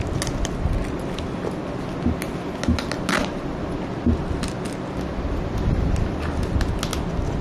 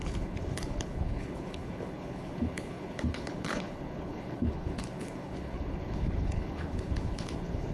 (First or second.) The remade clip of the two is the second